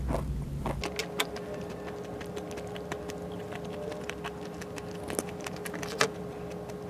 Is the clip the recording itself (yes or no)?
yes